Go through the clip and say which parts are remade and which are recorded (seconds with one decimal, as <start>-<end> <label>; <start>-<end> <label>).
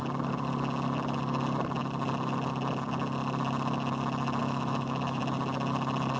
0.0-4.4 recorded; 4.4-5.2 remade; 5.2-6.2 recorded